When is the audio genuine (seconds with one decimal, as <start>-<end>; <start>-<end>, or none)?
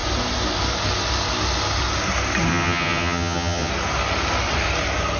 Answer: 0.0-2.5; 3.7-5.2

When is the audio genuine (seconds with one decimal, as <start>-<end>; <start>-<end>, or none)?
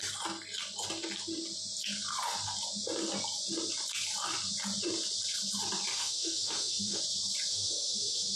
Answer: 0.0-5.9; 7.0-7.5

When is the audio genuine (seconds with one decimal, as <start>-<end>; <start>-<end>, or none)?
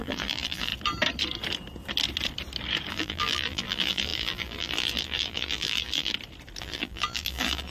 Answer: 0.7-2.9; 6.1-6.6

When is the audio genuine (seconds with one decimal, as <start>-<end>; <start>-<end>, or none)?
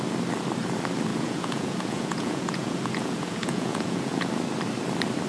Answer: 0.0-1.1; 4.3-5.3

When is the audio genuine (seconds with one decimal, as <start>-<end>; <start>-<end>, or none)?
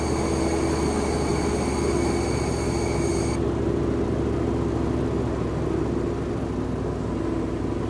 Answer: 0.0-7.9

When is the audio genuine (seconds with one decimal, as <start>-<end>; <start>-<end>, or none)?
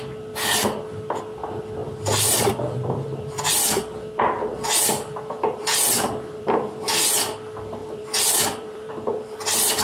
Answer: 0.0-1.8; 3.6-4.9; 7.1-7.8; 8.9-9.8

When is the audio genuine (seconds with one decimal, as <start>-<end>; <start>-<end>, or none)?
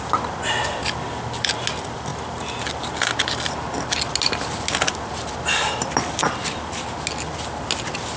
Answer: 0.0-8.2